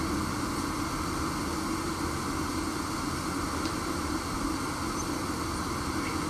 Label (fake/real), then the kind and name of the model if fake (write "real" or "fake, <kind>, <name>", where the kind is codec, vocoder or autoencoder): real